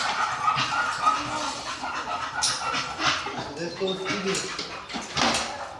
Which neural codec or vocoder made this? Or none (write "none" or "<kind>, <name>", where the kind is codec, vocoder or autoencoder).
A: none